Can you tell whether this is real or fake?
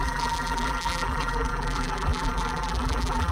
fake